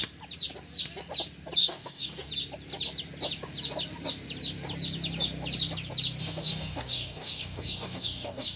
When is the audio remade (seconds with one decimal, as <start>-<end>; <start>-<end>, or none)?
1.6-2.3; 6.2-8.6